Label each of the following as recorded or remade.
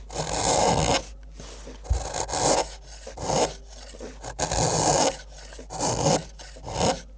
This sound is recorded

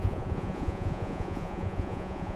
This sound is remade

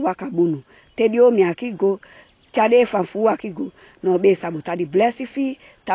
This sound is recorded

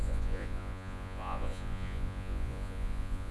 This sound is remade